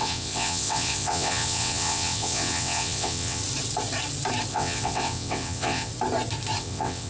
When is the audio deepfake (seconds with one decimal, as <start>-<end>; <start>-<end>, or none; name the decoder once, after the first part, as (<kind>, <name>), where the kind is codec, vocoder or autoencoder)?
0.0-3.4 (vocoder, WaveNeXt); 4.5-5.9; 6.6-7.1